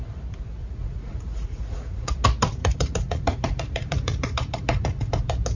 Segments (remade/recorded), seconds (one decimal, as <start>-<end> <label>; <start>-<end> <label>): 0.0-0.6 recorded; 0.6-2.1 remade; 2.1-2.6 recorded; 2.6-5.1 remade; 5.1-5.5 recorded